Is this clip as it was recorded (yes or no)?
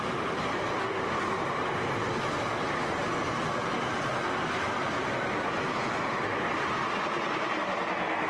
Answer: yes